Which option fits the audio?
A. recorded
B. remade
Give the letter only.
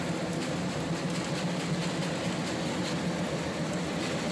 A